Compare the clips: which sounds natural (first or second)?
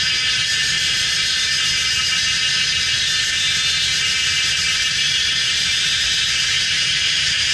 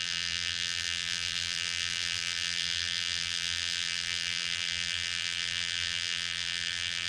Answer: first